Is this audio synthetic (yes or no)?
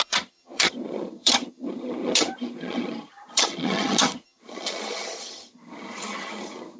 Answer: yes